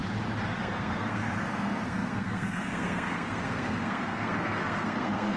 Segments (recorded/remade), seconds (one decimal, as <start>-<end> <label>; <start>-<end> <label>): 0.0-0.6 recorded; 0.6-5.4 remade